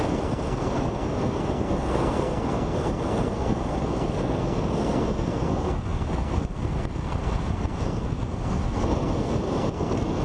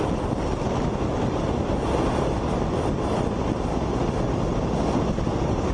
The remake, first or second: first